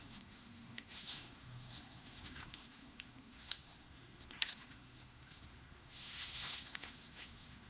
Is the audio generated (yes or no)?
yes